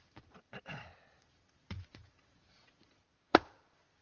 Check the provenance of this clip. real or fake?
fake